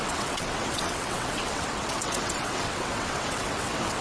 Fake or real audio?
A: fake